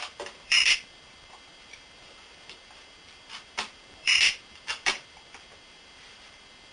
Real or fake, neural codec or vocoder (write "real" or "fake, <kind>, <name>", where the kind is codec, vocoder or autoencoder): fake, vocoder, BigVGAN v2